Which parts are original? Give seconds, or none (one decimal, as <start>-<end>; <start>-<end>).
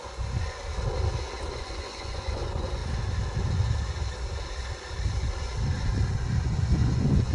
0.6-1.5; 2.8-6.4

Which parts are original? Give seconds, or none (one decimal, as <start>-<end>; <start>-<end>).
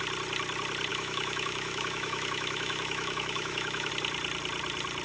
0.0-0.9; 3.9-5.0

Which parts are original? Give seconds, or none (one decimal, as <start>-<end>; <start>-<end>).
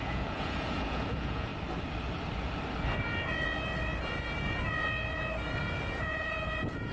1.5-5.6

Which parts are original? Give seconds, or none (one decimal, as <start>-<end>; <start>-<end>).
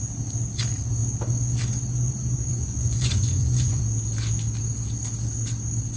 0.0-2.5; 3.8-6.0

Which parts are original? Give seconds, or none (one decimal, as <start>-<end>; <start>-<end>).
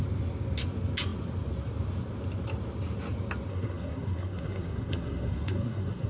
0.0-3.5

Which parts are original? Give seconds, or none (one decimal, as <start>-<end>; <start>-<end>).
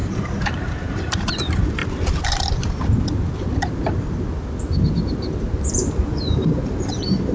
1.8-5.7